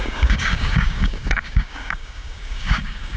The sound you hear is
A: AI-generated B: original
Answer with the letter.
A